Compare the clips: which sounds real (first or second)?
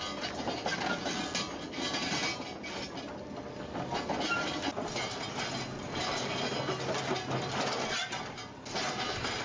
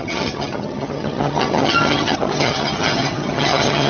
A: first